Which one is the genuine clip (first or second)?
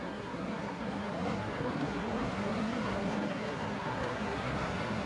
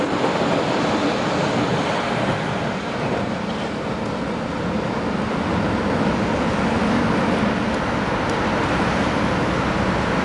second